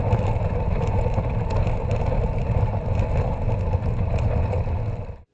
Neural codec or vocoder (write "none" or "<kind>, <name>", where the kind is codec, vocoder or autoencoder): none